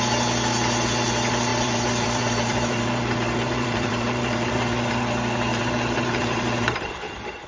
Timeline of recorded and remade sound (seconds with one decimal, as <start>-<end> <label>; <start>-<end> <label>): 0.0-1.5 recorded; 1.5-4.9 remade; 4.9-5.5 recorded; 5.5-7.5 remade